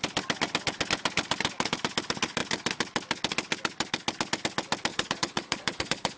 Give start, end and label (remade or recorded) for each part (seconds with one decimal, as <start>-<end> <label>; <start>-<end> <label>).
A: 0.0-4.9 recorded; 4.9-6.2 remade